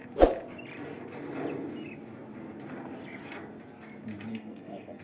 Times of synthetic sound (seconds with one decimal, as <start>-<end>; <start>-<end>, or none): 4.3-5.0